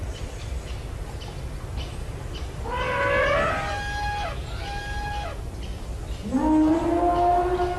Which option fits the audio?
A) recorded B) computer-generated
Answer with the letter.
A